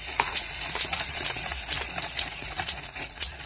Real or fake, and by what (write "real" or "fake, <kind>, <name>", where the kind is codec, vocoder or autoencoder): fake, vocoder, Vocos